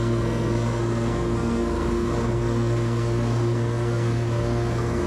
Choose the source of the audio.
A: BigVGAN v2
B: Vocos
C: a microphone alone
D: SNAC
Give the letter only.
D